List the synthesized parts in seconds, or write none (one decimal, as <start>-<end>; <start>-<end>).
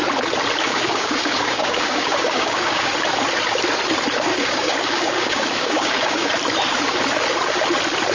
0.6-2.9; 4.3-6.3